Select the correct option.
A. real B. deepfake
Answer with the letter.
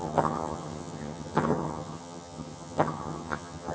B